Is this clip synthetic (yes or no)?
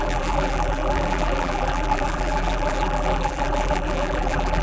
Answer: yes